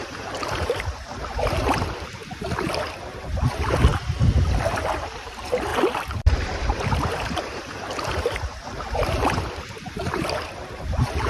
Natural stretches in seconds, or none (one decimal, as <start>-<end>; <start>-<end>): 2.2-3.1; 3.9-4.7; 5.7-6.2